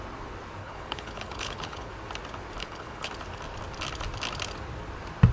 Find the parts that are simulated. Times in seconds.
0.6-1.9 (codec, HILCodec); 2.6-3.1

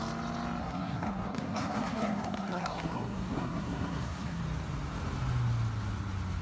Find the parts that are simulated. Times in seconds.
0.6-4.4 (codec, SNAC)

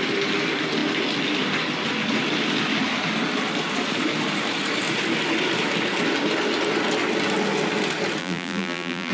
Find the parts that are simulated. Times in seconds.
8.2-9.1 (vocoder, BigVGAN v2)

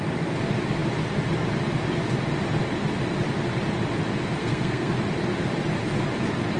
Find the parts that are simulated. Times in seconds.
4.4-4.9 (codec, SNAC)